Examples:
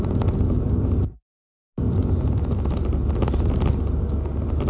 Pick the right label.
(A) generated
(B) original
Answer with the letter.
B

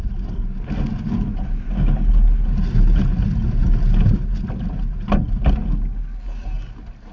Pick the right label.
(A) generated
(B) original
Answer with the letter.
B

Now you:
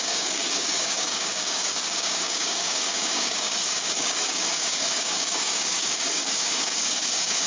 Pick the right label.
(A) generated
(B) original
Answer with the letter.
A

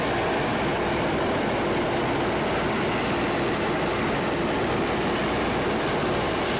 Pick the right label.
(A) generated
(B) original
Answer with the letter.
B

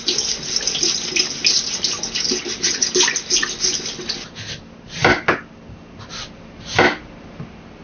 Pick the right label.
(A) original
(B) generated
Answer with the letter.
A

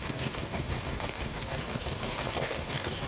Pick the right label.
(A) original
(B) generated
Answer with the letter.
B